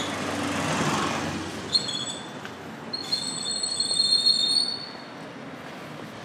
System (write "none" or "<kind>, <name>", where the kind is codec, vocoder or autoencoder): none